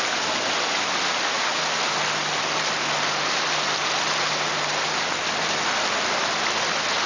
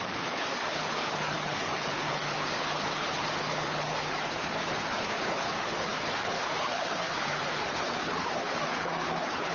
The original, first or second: first